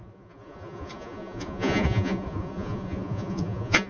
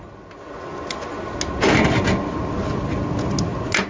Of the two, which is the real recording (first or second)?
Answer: second